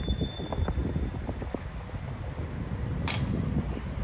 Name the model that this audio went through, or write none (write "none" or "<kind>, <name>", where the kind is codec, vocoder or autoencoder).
none